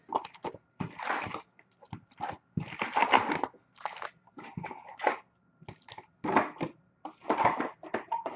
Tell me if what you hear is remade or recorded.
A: recorded